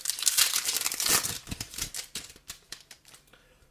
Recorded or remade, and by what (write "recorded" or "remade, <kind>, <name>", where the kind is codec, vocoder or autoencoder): remade, vocoder, BigVGAN v2